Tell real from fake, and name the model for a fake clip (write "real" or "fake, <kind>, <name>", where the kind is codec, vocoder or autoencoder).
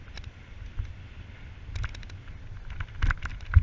real